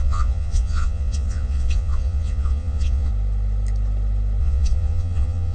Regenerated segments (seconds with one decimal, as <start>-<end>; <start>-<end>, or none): 0.0-3.1; 4.4-5.5